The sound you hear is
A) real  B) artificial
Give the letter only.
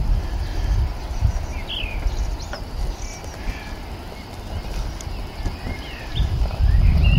A